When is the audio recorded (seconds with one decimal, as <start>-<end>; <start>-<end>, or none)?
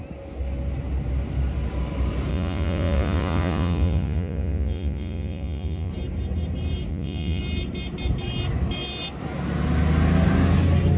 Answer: 0.0-2.3; 5.9-6.9; 7.4-11.0